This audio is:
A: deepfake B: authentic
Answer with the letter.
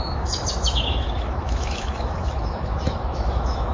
A